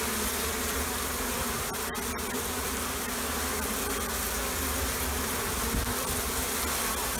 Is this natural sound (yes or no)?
yes